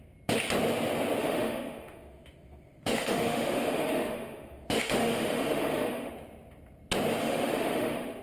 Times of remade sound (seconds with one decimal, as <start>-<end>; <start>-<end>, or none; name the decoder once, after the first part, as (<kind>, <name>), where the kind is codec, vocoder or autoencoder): 1.2-6.1 (autoencoder, DAC-VAE); 7.2-8.2

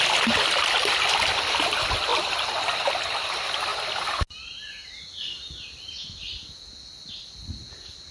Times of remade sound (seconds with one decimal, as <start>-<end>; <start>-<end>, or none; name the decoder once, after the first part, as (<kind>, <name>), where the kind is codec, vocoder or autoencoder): none

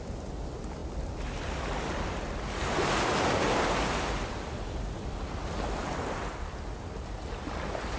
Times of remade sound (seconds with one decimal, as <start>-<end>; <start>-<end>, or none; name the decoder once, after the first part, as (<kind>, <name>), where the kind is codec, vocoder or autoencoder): none

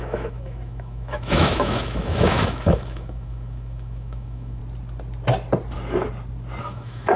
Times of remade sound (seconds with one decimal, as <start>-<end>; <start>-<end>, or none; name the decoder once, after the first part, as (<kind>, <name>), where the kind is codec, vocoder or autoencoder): 0.0-4.6 (autoencoder, DAC-VAE); 6.6-7.2

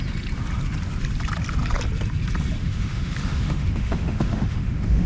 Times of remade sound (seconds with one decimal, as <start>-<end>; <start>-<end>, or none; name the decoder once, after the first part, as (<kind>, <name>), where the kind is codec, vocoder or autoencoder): 2.6-5.1 (autoencoder, DAC-VAE)

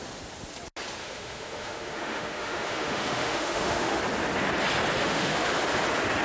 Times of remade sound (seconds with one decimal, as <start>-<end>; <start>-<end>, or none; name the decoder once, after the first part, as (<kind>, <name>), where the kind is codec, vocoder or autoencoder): 1.0-4.0 (autoencoder, DAC-VAE); 5.0-5.6

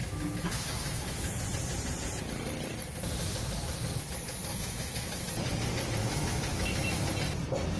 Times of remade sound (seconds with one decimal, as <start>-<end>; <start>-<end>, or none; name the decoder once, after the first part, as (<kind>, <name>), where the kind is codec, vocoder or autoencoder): 0.0-1.4 (autoencoder, DAC-VAE); 4.5-5.3; 6.0-7.1

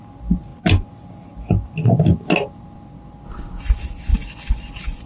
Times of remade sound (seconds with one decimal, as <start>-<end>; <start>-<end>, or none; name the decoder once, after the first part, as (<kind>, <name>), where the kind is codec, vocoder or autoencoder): none